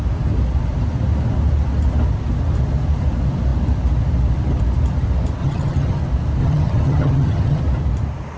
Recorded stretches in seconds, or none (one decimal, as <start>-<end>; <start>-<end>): 0.0-5.4; 6.0-6.4; 7.6-8.4